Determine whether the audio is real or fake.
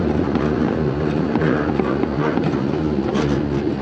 fake